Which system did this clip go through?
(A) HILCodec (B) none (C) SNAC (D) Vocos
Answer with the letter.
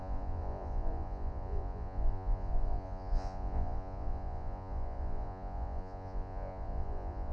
D